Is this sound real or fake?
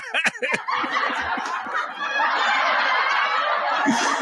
real